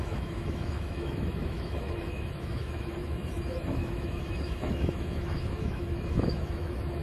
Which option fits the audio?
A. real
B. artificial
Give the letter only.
B